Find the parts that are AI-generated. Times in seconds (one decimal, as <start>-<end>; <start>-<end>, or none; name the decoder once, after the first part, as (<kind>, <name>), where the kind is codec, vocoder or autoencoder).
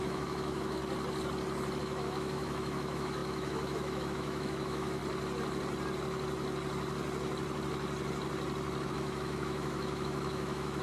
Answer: 0.0-0.8 (autoencoder, DAC-VAE); 1.8-5.0; 8.9-10.8